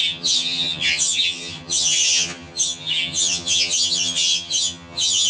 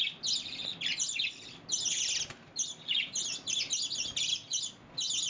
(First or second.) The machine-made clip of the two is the first